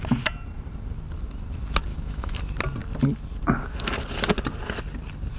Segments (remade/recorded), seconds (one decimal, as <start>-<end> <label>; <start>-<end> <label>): 0.0-1.9 recorded; 1.9-2.4 remade; 2.4-5.4 recorded